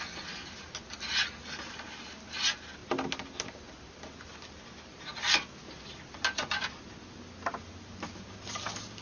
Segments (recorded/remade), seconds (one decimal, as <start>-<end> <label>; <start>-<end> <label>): 0.0-9.0 recorded